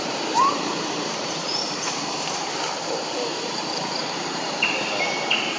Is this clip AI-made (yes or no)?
yes